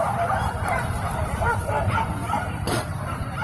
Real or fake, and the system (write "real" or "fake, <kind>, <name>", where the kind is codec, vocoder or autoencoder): fake, vocoder, BigVGAN v2